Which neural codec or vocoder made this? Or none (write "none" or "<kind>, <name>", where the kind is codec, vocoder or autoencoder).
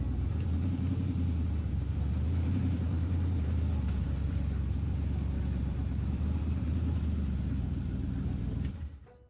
vocoder, BigVGAN v2